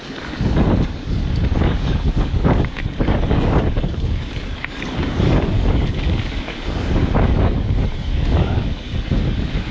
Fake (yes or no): yes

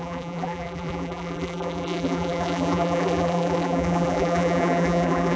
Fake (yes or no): yes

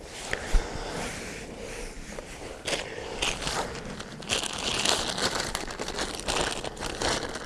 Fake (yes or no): no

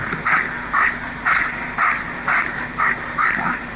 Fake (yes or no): no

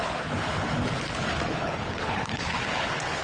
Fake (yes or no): yes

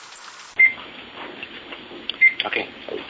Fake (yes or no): no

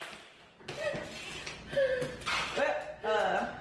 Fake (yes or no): no